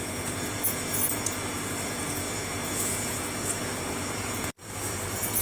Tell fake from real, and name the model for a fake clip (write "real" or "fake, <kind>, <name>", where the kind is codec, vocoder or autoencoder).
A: fake, vocoder, Vocos